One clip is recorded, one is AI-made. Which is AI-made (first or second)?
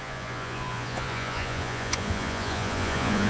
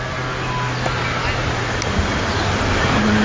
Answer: first